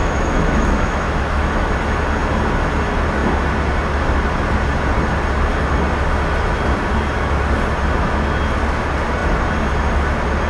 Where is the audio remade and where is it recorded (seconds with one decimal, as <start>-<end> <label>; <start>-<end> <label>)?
0.0-1.7 remade; 1.7-10.5 recorded